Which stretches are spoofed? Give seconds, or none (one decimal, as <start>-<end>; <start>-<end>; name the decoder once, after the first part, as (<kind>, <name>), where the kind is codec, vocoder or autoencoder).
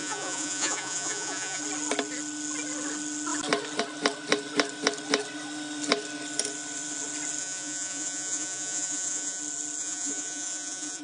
0.0-1.6 (vocoder, Vocos); 7.4-9.4; 9.8-11.0